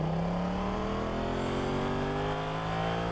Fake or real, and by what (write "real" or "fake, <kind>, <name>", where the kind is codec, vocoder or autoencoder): real